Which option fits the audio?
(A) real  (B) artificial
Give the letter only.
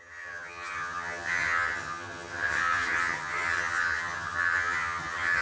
B